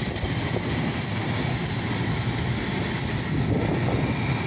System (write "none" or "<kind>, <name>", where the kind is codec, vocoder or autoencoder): none